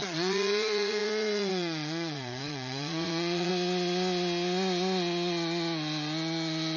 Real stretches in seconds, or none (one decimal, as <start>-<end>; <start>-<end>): 3.5-6.8